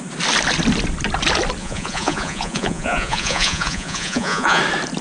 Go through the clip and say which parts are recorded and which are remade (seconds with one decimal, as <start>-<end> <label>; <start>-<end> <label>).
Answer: 0.0-1.6 recorded; 1.6-4.6 remade; 4.6-5.0 recorded